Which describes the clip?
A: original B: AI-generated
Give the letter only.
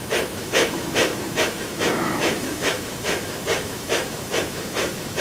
B